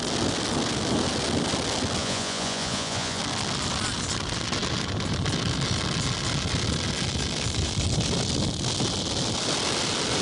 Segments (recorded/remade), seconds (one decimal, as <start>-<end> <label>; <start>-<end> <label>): 0.0-2.0 recorded; 2.0-3.2 remade; 3.2-10.2 recorded